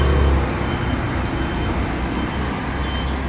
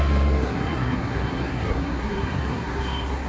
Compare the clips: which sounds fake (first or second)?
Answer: second